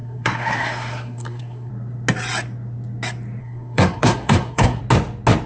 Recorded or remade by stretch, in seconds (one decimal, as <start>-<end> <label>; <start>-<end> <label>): 0.0-1.7 remade; 1.7-3.4 recorded; 3.4-4.8 remade; 4.8-5.5 recorded